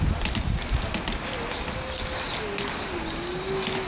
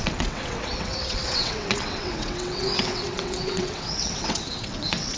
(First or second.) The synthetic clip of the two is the second